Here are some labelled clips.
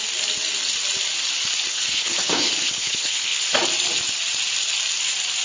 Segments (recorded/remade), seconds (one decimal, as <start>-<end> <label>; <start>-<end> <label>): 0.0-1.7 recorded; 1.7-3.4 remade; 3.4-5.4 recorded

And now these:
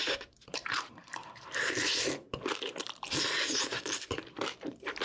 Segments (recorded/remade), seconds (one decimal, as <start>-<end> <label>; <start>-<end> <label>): 0.0-5.0 remade

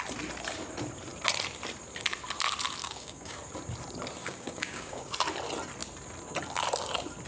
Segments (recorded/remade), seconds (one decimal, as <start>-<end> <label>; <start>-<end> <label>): 0.0-2.8 recorded; 2.8-3.4 remade; 3.4-4.2 recorded; 4.2-5.1 remade; 5.1-7.3 recorded

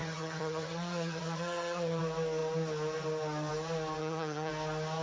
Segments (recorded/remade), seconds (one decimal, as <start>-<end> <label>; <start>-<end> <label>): 0.0-2.0 remade; 2.0-4.0 recorded; 4.0-4.5 remade; 4.5-5.0 recorded